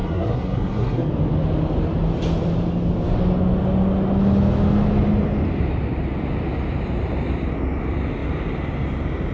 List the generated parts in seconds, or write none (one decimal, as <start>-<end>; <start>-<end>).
0.0-1.1